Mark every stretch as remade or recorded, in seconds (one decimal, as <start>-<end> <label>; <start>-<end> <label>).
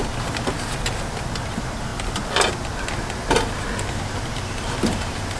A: 0.0-5.4 recorded